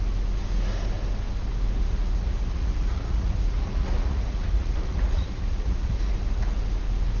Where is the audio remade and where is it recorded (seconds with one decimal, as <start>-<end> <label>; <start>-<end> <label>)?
0.0-1.8 recorded; 1.8-6.1 remade; 6.1-7.2 recorded